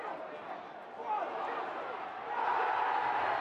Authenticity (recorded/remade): recorded